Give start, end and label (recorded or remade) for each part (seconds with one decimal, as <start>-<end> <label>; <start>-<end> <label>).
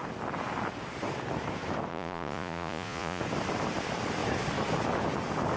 0.0-1.9 recorded; 1.9-3.2 remade; 3.2-5.6 recorded